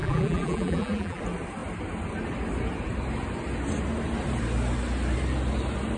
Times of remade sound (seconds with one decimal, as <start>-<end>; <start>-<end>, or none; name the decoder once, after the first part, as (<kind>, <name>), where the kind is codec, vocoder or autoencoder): 0.0-1.2 (vocoder, BigVGAN v2)